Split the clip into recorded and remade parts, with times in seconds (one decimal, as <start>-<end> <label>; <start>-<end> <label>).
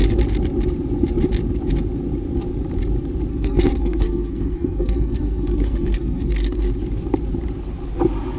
0.0-3.3 recorded; 3.3-6.7 remade; 6.7-8.4 recorded